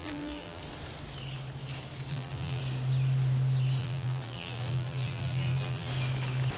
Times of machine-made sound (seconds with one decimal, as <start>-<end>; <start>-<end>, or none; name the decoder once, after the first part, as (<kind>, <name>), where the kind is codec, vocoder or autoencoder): 0.0-0.6 (vocoder, BigVGAN v2); 2.1-2.6; 3.8-5.9

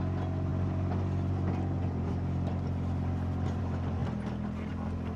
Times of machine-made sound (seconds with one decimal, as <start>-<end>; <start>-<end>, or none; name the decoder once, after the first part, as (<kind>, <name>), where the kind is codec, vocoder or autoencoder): none

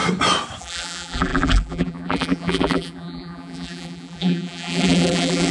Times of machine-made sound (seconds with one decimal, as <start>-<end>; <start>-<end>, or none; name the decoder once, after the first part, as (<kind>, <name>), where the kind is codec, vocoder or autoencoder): 0.6-5.5 (vocoder, BigVGAN v2)

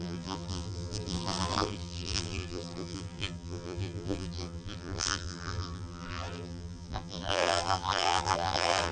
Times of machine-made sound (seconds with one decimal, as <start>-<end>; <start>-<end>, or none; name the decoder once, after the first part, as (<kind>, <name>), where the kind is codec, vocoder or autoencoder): 0.0-8.9 (vocoder, BigVGAN v2)

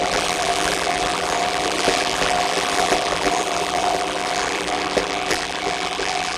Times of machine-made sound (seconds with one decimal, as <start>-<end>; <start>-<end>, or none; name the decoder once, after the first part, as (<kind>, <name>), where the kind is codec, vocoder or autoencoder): 0.0-6.4 (vocoder, BigVGAN v2)

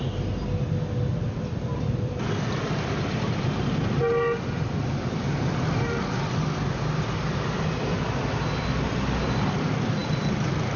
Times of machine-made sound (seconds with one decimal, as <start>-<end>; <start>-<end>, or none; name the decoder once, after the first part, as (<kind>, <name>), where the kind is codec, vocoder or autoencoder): 0.0-4.0 (vocoder, BigVGAN v2); 7.8-10.8